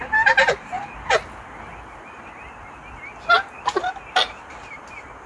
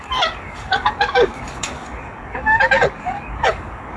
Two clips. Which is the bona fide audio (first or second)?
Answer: first